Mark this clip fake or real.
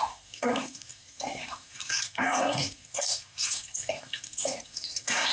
fake